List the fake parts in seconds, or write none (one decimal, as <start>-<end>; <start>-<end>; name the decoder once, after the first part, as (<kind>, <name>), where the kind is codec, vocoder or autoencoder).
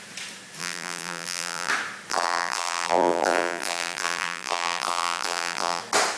0.6-1.7 (vocoder, BigVGAN v2); 2.1-5.8